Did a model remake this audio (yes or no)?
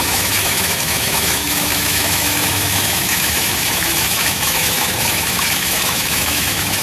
yes